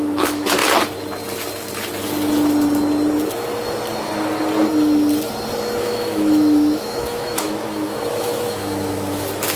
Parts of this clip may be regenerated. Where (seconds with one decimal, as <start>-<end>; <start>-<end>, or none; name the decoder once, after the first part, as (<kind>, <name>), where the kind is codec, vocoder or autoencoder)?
0.0-0.6 (autoencoder, DAC-VAE); 5.8-9.6